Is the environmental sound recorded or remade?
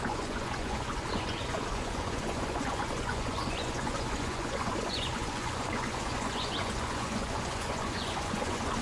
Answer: remade